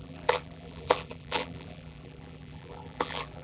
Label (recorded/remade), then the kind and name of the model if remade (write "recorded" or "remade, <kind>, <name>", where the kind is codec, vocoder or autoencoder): remade, vocoder, BigVGAN v2